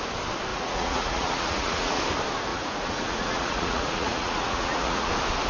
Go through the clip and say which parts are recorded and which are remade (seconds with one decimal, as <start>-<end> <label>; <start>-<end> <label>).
0.0-0.5 recorded; 0.5-2.0 remade; 2.0-2.5 recorded; 2.5-5.1 remade; 5.1-5.5 recorded